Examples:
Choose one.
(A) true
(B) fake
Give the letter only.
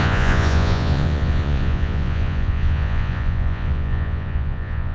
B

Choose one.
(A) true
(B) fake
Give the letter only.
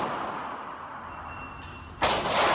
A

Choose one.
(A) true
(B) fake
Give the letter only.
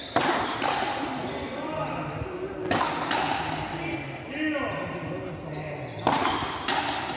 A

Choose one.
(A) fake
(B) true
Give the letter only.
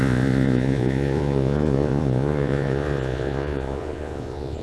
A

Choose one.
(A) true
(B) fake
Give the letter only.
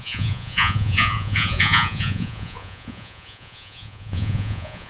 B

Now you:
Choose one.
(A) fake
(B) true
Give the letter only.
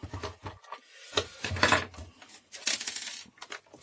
B